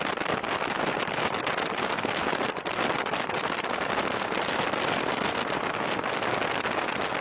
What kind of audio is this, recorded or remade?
recorded